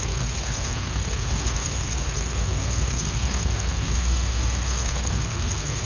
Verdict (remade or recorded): remade